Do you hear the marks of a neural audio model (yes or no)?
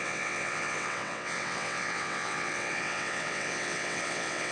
yes